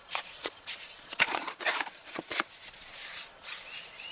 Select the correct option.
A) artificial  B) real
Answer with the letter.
A